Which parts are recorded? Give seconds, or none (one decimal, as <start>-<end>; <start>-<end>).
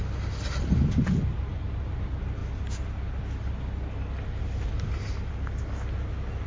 0.0-6.5